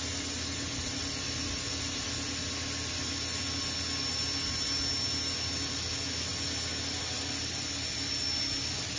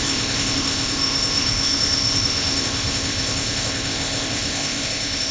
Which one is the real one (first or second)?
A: first